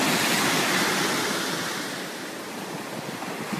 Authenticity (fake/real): real